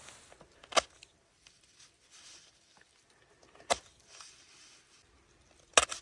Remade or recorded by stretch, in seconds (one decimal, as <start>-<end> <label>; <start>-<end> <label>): 0.0-0.7 recorded; 0.7-4.3 remade; 4.3-6.0 recorded